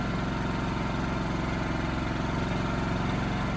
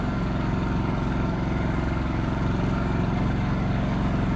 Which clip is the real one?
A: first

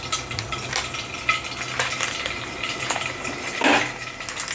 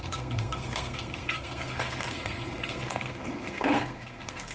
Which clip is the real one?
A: first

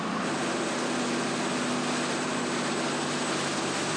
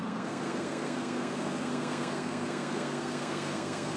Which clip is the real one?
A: first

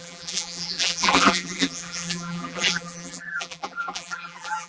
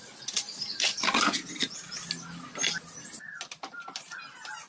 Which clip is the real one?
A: second